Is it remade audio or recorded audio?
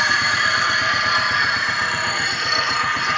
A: remade